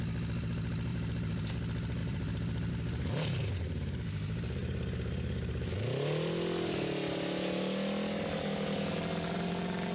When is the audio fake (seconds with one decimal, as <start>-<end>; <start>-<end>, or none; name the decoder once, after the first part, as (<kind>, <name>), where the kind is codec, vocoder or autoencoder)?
0.9-1.5 (vocoder, BigVGAN v2); 2.0-2.7; 4.6-5.7